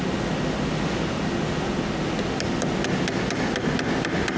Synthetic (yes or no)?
no